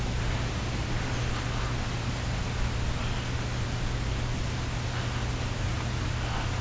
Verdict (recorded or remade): recorded